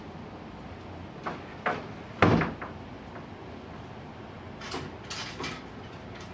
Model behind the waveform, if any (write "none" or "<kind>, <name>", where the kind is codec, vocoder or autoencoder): none